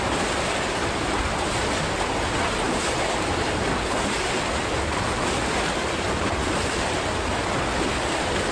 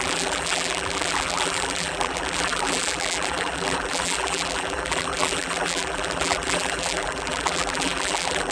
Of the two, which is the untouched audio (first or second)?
first